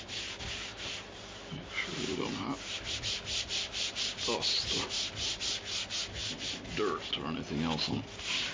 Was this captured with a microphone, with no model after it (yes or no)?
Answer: yes